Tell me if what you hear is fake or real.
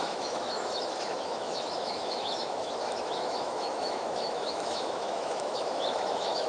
fake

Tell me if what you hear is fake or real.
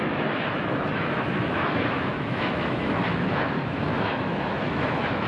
fake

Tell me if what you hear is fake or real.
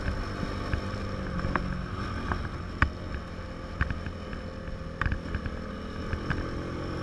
real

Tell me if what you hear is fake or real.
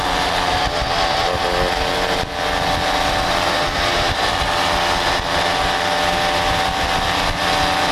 real